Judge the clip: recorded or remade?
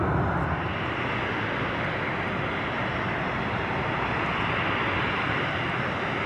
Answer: recorded